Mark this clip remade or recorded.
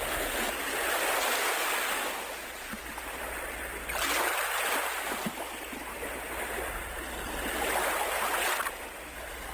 recorded